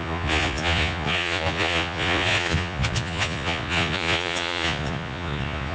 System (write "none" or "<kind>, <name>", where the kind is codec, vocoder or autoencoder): vocoder, Vocos